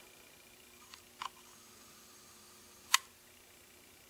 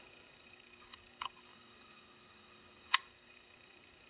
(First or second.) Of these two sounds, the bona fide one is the first